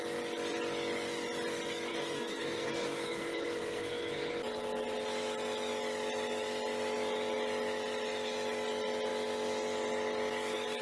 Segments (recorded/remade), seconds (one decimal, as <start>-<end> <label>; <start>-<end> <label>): 0.0-1.9 recorded; 1.9-4.3 remade; 4.3-10.8 recorded